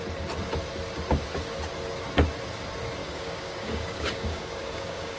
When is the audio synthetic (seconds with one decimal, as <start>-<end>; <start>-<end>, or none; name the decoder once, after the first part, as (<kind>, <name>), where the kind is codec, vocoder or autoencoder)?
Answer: 3.0-5.2 (codec, DAC)